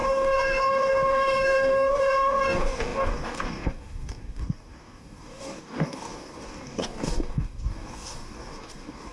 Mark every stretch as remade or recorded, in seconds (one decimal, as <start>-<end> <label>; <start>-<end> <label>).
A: 0.0-9.1 remade